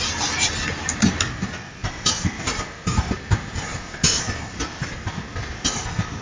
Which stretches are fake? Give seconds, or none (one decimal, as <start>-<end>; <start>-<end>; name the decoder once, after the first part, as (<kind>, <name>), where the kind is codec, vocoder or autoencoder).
1.8-4.0 (vocoder, BigVGAN v2)